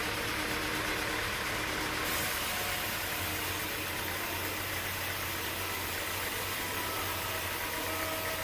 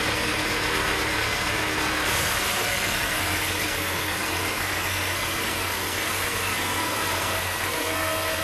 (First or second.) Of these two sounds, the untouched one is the first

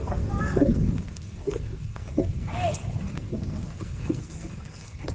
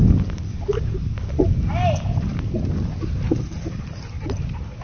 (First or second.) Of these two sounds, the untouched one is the second